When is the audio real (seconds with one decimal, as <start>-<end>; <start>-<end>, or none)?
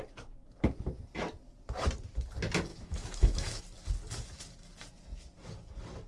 0.0-2.7; 3.6-6.1